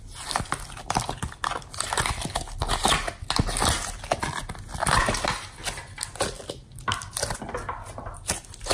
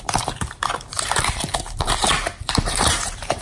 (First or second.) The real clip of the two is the first